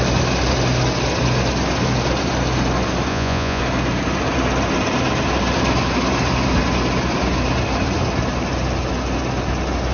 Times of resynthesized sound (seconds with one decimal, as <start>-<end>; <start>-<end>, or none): 3.1-3.6